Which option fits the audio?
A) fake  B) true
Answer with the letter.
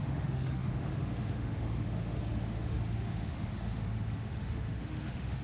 A